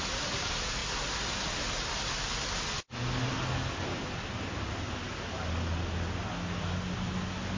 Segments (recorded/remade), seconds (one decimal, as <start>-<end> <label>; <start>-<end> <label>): 0.0-7.6 recorded